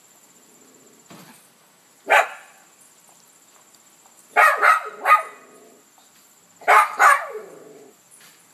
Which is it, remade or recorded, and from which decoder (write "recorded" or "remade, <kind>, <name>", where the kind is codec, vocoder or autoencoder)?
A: recorded